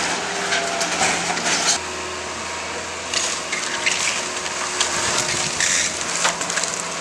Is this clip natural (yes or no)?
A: yes